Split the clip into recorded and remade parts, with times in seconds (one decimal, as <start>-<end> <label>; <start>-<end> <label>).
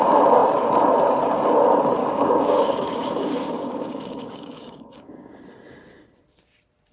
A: 0.0-2.0 recorded; 2.0-5.4 remade; 5.4-6.9 recorded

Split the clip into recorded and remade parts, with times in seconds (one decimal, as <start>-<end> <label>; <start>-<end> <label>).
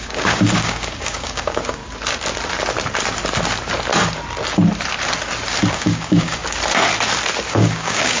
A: 0.0-1.8 remade; 1.8-5.7 recorded; 5.7-6.4 remade; 6.4-7.5 recorded; 7.5-8.2 remade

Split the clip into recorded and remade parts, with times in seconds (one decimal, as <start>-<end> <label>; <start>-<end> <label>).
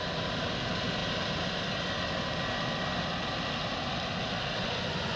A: 0.0-4.6 recorded; 4.6-5.2 remade